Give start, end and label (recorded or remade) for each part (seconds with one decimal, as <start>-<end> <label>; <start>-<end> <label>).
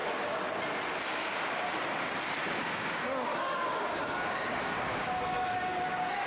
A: 0.0-1.2 recorded; 1.2-1.8 remade; 1.8-2.6 recorded; 2.6-6.3 remade